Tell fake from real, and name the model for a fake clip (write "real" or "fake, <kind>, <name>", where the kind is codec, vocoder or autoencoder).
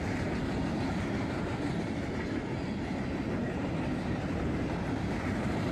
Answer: real